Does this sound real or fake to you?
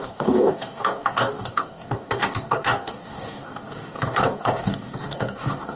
fake